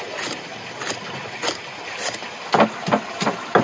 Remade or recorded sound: recorded